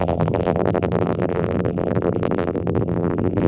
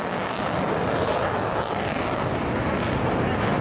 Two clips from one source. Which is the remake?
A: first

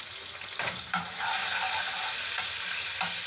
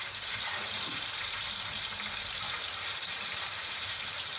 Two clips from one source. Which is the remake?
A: second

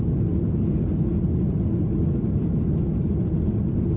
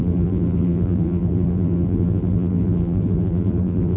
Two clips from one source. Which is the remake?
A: second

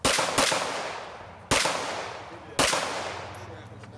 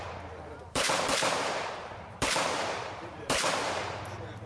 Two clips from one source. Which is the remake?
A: second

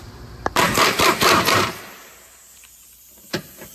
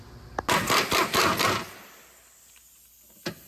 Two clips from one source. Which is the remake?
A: first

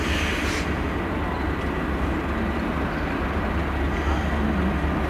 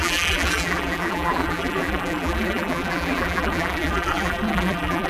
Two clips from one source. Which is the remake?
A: second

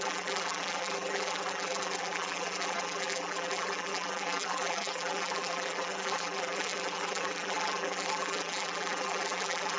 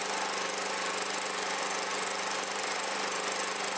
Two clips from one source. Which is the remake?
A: first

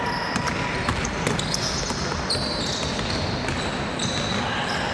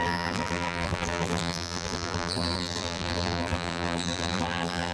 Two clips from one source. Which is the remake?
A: second